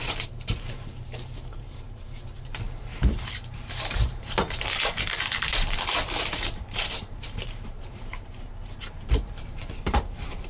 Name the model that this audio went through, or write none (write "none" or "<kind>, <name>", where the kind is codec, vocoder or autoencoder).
vocoder, BigVGAN v2